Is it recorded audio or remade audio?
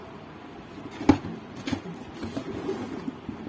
recorded